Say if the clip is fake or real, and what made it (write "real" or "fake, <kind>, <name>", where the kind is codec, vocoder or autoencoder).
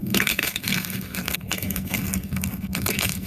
fake, codec, SNAC